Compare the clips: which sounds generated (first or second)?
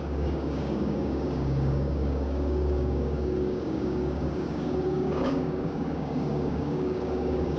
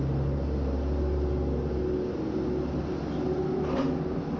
first